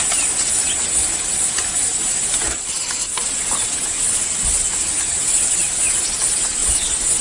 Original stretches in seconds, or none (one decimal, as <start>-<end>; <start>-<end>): 0.0-7.2

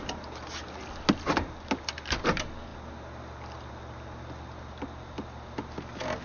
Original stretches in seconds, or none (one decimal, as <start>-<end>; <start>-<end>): 0.0-6.2